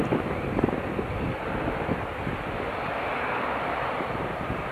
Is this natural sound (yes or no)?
yes